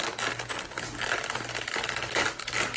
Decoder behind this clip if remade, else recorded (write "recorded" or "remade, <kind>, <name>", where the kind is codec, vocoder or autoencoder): recorded